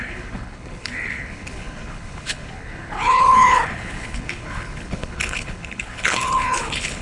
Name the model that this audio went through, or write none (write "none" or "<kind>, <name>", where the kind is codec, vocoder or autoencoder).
codec, HILCodec